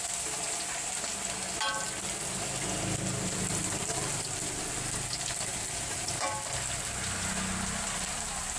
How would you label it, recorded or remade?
recorded